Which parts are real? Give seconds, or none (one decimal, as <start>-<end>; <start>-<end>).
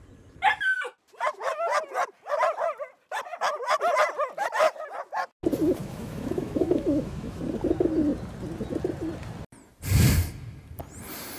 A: 0.0-5.8; 7.4-11.4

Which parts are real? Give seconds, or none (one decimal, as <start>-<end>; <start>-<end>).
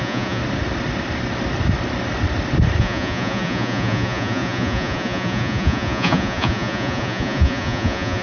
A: 0.4-2.8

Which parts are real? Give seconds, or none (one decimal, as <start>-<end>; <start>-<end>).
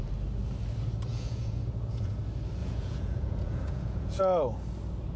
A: 0.0-1.1; 2.2-2.6; 4.2-5.2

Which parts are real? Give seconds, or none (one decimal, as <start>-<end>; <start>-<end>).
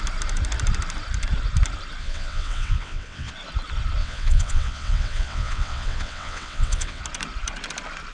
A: 0.0-2.0; 3.3-4.0; 7.0-8.1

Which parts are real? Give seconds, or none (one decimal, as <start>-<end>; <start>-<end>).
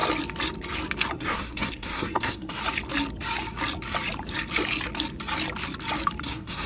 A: 0.0-1.1; 2.6-6.2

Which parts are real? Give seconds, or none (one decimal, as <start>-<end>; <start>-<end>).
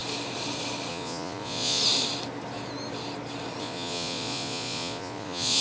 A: 0.0-0.9; 1.8-3.6